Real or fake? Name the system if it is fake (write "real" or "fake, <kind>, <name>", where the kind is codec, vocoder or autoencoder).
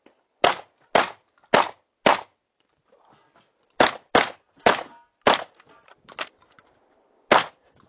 real